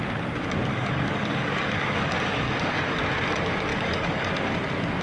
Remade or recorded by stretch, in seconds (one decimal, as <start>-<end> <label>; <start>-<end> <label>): 0.0-0.7 recorded; 0.7-3.0 remade; 3.0-3.7 recorded; 3.7-4.3 remade; 4.3-5.0 recorded